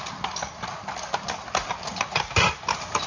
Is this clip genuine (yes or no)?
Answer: yes